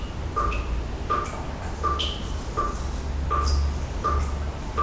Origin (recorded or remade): recorded